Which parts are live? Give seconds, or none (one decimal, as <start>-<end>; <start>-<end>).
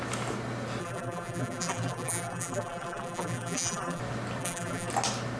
0.0-0.8; 4.0-4.4; 4.9-5.4